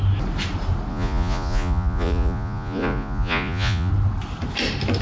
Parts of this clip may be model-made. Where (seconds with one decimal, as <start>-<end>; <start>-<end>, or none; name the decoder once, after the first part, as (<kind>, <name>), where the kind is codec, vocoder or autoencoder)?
0.9-3.9 (vocoder, Vocos)